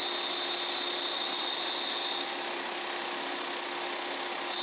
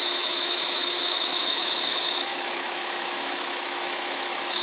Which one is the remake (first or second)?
second